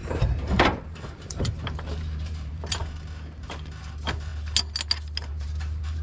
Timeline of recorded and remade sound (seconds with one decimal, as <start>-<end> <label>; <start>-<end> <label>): 0.0-2.8 remade; 2.8-3.8 recorded; 3.8-4.3 remade; 4.3-5.3 recorded; 5.3-6.0 remade

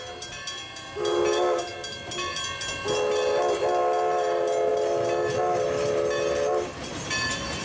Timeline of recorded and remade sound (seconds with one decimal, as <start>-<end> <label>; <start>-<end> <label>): 0.0-7.6 recorded